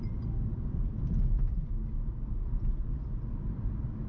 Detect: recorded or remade remade